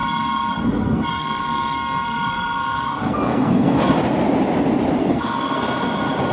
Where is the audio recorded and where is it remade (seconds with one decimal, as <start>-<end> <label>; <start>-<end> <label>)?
0.0-3.8 remade; 3.8-5.0 recorded; 5.0-5.6 remade; 5.6-6.3 recorded